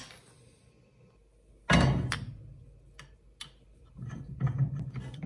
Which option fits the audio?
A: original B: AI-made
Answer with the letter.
A